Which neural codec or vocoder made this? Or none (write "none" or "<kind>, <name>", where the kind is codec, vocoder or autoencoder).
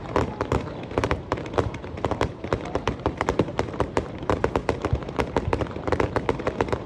vocoder, BigVGAN v2